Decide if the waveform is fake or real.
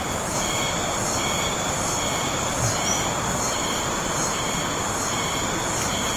real